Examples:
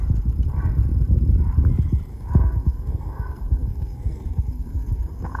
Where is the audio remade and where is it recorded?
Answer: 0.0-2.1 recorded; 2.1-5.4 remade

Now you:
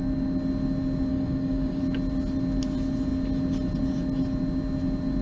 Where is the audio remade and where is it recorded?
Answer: 0.0-1.1 recorded; 1.1-1.8 remade; 1.8-5.2 recorded

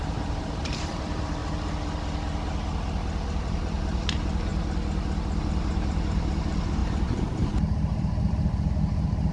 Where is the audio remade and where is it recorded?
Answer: 0.0-1.4 remade; 1.4-3.4 recorded; 3.4-4.5 remade; 4.5-5.4 recorded; 5.4-9.3 remade

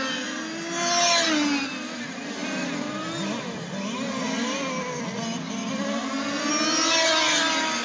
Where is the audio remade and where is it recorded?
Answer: 0.0-7.8 recorded

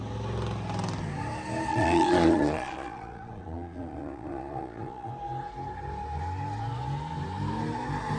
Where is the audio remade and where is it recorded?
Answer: 0.0-1.7 recorded; 1.7-5.1 remade; 5.1-8.2 recorded